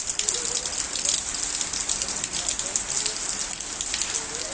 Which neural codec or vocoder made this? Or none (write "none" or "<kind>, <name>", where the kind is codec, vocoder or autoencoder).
none